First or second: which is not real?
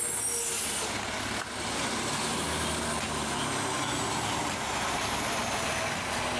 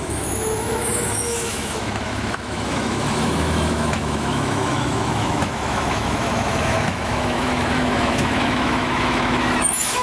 second